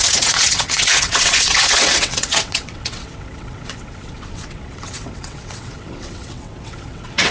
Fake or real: fake